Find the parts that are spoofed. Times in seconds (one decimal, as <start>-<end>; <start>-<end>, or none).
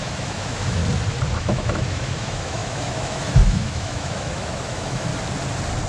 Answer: 0.0-0.8; 1.4-5.1